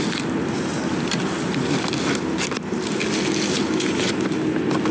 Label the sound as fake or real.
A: real